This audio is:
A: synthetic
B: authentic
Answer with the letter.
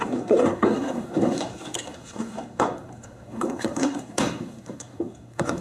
A